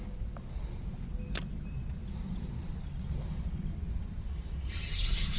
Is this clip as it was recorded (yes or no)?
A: yes